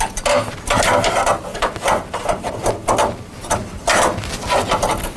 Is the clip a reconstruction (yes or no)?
no